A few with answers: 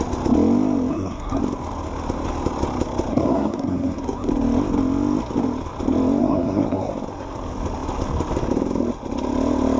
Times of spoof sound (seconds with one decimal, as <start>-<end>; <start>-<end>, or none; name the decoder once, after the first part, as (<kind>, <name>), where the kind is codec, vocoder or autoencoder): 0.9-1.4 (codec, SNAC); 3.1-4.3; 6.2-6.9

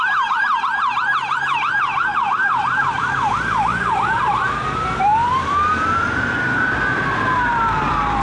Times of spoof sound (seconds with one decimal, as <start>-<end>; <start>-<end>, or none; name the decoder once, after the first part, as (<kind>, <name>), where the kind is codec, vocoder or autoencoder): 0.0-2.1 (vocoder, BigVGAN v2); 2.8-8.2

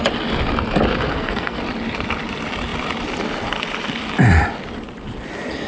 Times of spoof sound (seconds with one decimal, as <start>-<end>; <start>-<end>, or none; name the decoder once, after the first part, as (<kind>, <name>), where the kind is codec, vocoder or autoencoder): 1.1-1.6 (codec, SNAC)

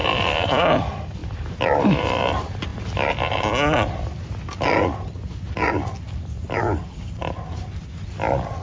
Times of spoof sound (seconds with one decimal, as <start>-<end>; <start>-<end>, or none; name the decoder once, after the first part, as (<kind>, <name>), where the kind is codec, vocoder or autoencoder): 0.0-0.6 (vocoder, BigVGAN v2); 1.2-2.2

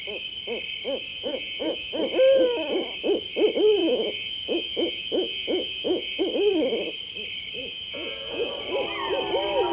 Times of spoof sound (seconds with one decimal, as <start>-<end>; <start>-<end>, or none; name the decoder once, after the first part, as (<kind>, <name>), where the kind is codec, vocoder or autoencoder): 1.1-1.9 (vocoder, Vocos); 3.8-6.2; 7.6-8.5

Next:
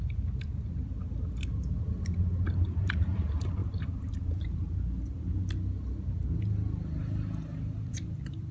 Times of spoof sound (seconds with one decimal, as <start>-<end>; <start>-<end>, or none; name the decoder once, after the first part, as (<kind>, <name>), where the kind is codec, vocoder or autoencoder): 3.6-5.4 (vocoder, BigVGAN v2); 7.5-8.5